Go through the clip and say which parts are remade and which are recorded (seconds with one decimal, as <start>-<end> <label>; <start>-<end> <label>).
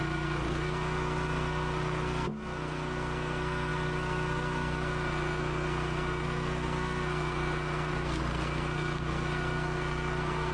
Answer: 0.0-10.5 remade